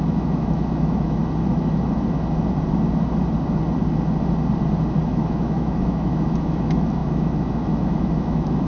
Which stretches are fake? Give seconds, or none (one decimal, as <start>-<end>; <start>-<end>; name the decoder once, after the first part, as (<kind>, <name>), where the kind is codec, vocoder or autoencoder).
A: 0.0-1.2 (autoencoder, DAC-VAE); 5.0-8.7